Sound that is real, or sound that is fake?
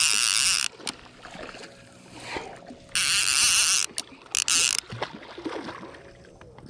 real